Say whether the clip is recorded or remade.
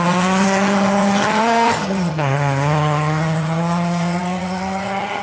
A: remade